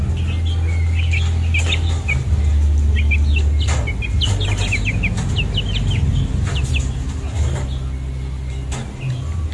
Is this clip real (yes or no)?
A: yes